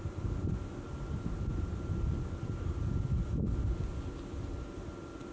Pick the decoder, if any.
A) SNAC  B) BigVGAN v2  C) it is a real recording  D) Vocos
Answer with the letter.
C